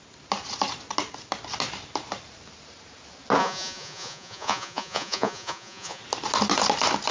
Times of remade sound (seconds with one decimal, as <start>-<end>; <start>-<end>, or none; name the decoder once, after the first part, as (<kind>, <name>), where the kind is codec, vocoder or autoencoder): 3.4-6.0 (vocoder, Vocos)